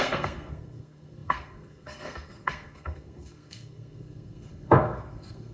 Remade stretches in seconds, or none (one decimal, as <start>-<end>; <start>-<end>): 0.0-5.5